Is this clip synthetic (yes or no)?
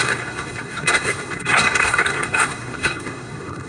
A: yes